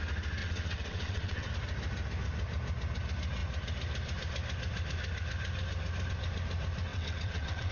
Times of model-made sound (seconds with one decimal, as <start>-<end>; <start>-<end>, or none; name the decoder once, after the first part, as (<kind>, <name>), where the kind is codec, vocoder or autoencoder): 0.4-1.5 (vocoder, WaveNeXt); 6.9-7.7